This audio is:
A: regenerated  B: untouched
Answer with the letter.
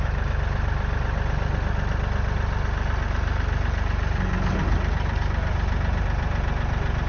B